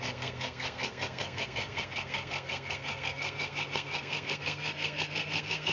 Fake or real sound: fake